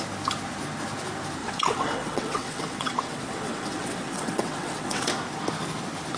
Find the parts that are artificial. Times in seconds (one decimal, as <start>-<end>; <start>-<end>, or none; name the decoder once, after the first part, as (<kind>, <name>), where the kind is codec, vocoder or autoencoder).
1.4-5.1 (vocoder, WaveNeXt)